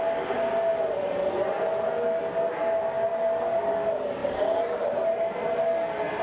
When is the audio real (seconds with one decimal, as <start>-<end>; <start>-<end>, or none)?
0.0-4.2; 5.0-6.2